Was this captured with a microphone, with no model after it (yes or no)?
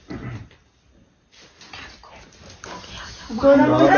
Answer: yes